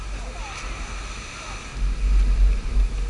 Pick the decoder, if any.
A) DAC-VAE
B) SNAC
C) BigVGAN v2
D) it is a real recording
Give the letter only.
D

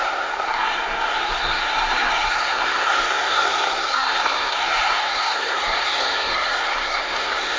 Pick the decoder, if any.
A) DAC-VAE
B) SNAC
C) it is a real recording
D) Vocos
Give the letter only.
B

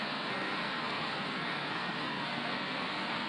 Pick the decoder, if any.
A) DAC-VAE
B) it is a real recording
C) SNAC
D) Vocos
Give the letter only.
C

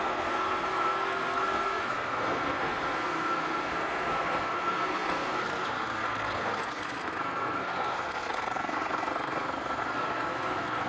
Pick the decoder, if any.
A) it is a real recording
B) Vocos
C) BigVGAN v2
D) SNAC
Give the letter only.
D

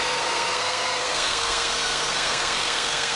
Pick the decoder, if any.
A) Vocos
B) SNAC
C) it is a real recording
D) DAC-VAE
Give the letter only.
B